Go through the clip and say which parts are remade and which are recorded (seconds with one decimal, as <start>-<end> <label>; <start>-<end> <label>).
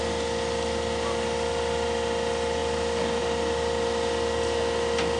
0.0-5.2 recorded